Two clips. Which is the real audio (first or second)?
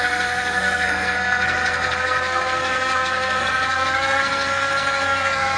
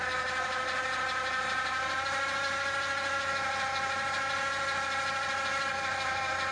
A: second